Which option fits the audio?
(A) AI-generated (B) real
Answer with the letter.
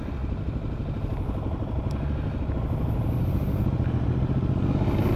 B